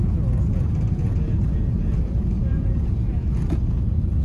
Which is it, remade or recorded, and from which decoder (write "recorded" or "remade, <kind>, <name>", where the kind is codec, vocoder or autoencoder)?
remade, vocoder, Vocos